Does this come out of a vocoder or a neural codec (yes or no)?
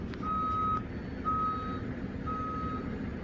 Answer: no